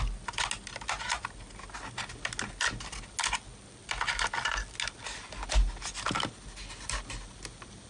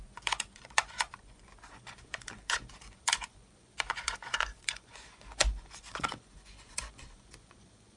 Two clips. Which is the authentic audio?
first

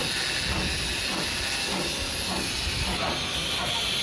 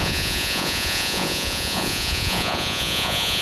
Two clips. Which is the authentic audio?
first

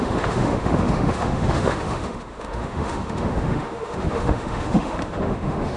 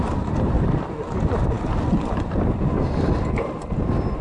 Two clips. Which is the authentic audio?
second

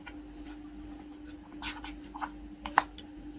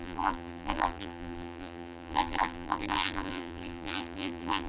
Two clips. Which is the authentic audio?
first